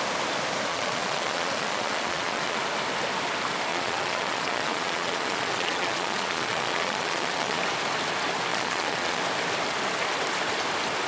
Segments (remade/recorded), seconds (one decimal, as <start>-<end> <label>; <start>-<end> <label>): 0.0-0.7 recorded; 0.7-2.6 remade; 2.6-3.7 recorded; 3.7-7.6 remade; 7.6-8.5 recorded; 8.5-9.2 remade; 9.2-11.1 recorded